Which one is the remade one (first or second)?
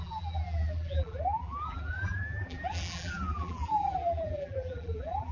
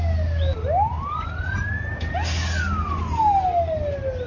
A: first